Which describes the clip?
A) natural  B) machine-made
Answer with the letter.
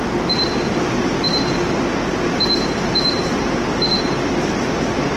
A